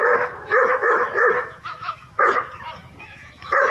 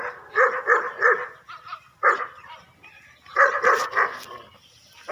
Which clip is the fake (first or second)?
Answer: first